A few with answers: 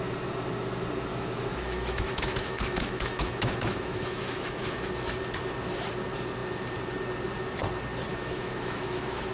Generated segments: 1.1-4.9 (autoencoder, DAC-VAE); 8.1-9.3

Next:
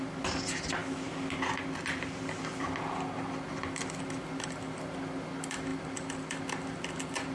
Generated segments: 5.7-6.4 (vocoder, BigVGAN v2)

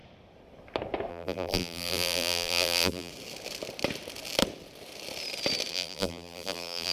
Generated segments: 1.1-3.1 (vocoder, BigVGAN v2); 5.7-6.9

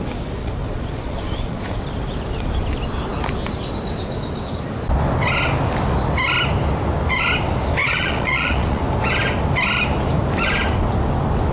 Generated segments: 0.4-1.8 (vocoder, Vocos); 7.8-8.8

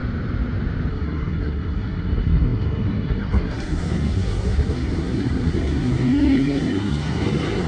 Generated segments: 0.9-7.7 (codec, SNAC)

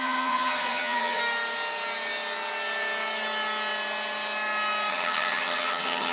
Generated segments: 0.0-1.2 (vocoder, HiFi-GAN); 4.9-6.1